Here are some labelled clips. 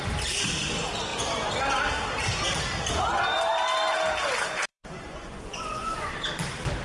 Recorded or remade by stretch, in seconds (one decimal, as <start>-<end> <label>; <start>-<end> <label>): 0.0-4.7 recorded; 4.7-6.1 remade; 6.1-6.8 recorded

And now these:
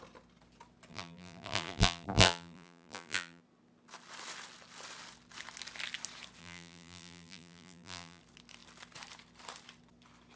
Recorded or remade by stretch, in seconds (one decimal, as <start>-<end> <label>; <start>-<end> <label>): 0.0-0.9 recorded; 0.9-3.4 remade; 3.4-6.4 recorded; 6.4-8.2 remade; 8.2-10.4 recorded

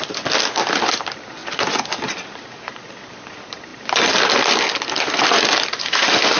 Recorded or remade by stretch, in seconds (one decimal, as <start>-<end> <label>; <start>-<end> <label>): 0.0-6.4 recorded

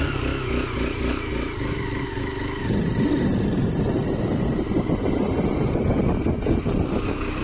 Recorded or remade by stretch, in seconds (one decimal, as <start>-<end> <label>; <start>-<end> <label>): 0.0-7.4 recorded

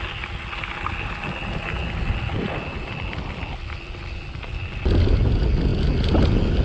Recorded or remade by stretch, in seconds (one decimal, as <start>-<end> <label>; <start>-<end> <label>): 0.0-6.6 recorded

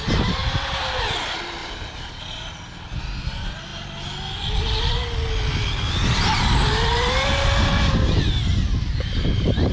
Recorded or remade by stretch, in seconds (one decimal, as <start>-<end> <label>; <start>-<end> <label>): 0.0-1.6 recorded; 1.6-2.2 remade; 2.2-8.7 recorded; 8.7-9.7 remade

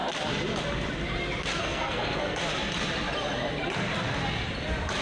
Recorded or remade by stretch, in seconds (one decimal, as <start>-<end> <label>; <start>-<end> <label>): 0.0-1.6 recorded; 1.6-2.4 remade; 2.4-5.0 recorded